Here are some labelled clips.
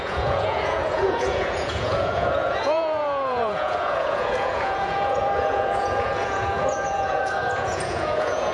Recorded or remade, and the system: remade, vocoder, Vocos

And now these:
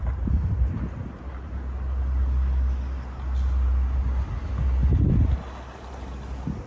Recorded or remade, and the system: recorded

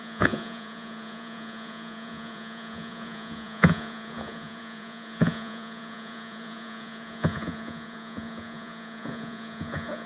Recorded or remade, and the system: remade, vocoder, Vocos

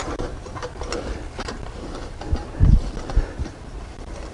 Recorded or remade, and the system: recorded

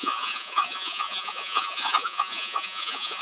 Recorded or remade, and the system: remade, vocoder, Vocos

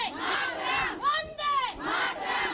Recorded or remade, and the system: recorded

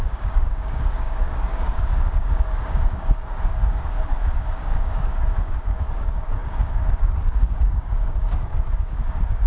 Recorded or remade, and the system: remade, codec, DAC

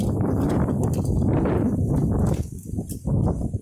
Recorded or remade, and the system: recorded